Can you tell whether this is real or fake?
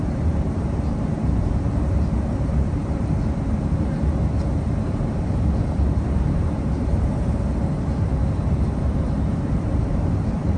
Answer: fake